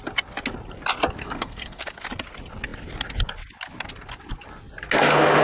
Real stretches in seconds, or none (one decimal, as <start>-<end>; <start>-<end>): 0.0-1.2; 1.8-5.4